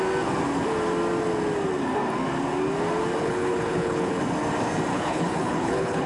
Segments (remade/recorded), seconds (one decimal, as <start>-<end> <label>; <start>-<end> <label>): 0.0-3.2 recorded; 3.2-4.1 remade; 4.1-4.9 recorded; 4.9-6.1 remade